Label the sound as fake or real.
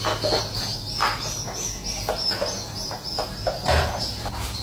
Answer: real